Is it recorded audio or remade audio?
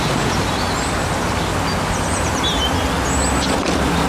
recorded